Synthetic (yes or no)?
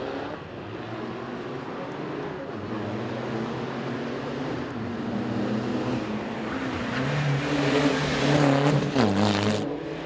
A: no